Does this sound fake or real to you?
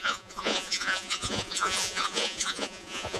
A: fake